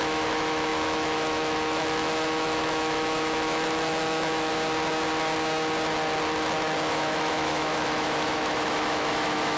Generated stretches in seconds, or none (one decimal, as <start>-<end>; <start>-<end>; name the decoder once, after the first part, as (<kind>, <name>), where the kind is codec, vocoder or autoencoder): 0.0-4.5 (autoencoder, DAC-VAE); 6.9-9.6